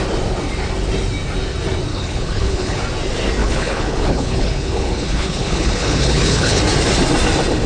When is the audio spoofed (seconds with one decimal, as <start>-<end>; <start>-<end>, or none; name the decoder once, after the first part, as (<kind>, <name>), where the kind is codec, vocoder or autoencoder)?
1.9-2.8 (codec, HILCodec); 3.4-6.6

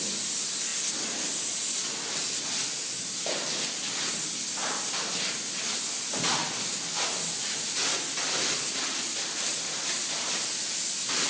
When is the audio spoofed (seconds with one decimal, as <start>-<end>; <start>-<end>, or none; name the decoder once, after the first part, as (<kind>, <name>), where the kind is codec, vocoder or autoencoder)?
none

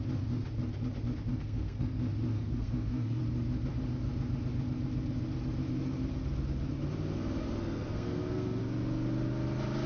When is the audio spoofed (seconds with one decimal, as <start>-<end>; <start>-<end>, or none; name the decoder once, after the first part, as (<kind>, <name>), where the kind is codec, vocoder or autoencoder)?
1.3-1.9 (codec, SNAC); 2.3-3.2; 7.4-8.6